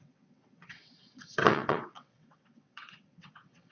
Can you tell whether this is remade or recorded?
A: remade